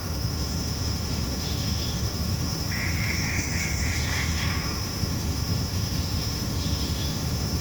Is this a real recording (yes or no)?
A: no